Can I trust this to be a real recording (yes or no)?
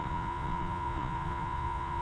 no